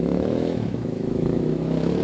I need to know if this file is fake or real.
fake